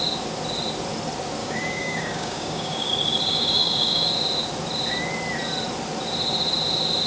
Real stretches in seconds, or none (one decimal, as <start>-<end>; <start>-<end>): 0.0-1.4; 2.9-3.3; 4.1-7.1